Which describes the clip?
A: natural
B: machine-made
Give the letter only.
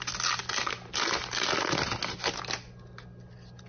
A